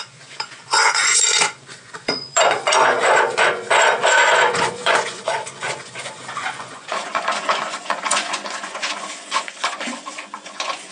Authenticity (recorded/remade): remade